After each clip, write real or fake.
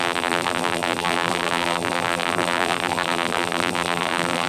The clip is fake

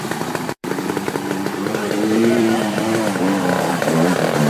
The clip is fake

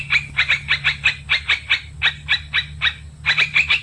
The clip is fake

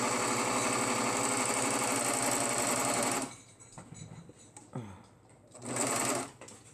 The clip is real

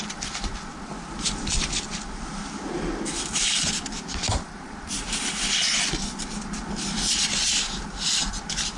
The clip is fake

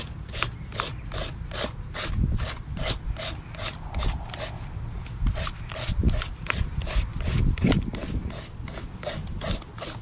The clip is real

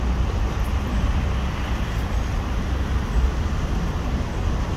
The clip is real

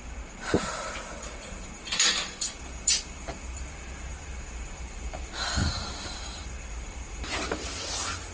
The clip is fake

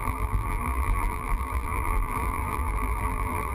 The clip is fake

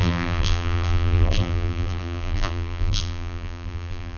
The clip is fake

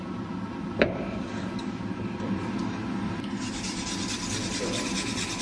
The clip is fake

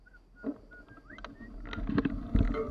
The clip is real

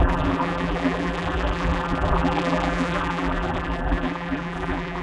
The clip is fake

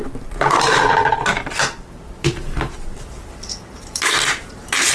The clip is fake